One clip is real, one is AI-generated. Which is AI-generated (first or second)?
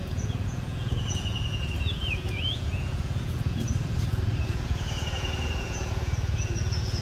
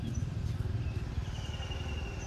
first